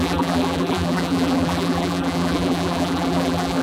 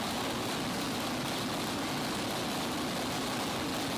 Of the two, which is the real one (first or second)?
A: second